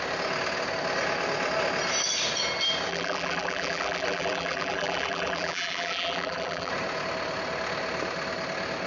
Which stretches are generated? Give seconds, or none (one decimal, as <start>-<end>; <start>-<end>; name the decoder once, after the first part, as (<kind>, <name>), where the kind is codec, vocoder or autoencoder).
2.9-6.7 (vocoder, BigVGAN v2)